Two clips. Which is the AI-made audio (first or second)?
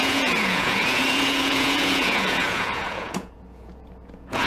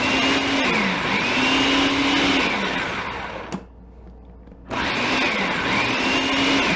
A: first